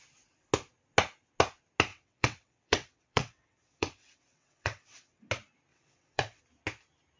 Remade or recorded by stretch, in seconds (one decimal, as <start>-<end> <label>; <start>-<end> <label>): 0.0-1.9 recorded; 1.9-5.3 remade; 5.3-5.7 recorded; 5.7-6.4 remade; 6.4-7.2 recorded